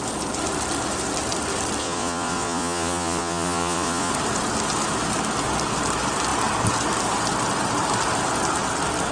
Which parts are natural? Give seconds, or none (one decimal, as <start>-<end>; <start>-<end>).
0.0-1.8; 4.1-9.1